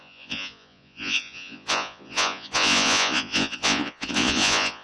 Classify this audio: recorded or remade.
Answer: remade